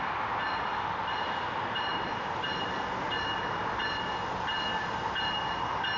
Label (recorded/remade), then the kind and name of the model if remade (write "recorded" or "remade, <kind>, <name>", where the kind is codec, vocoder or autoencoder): recorded